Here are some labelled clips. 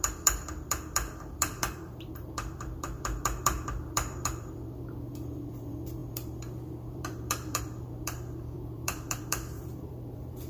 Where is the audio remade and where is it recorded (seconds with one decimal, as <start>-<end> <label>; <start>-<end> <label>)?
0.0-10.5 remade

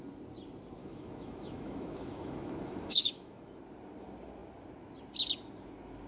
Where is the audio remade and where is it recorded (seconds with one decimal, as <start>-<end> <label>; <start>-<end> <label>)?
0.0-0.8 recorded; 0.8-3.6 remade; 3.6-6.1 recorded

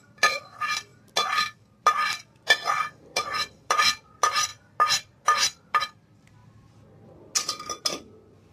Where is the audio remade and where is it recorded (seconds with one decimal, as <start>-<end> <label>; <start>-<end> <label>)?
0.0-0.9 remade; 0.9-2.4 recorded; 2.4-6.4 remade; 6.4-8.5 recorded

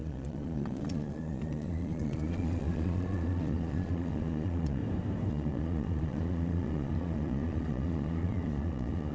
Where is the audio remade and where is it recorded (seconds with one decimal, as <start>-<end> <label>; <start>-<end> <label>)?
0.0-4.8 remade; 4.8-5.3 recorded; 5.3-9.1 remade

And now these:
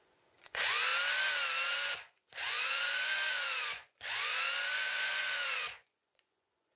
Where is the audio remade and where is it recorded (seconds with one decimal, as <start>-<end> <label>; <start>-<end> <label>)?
0.0-0.9 remade; 0.9-1.7 recorded; 1.7-6.8 remade